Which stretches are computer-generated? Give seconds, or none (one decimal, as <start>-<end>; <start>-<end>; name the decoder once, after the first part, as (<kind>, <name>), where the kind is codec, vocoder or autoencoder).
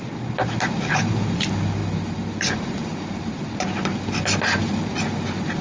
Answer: none